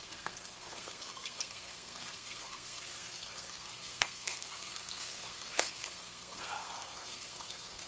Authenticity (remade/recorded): remade